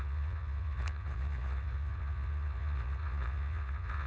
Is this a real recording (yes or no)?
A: no